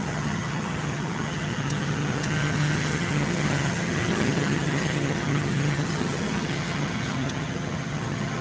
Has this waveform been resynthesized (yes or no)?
yes